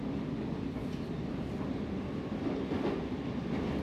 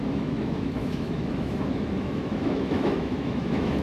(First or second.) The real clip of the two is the first